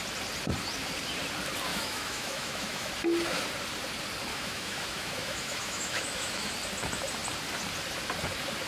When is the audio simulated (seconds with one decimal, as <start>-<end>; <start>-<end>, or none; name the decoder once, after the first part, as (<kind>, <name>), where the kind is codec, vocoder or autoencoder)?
1.7-2.9 (autoencoder, DAC-VAE); 4.3-6.5